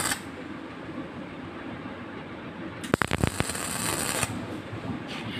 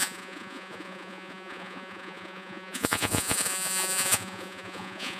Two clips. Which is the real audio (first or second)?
first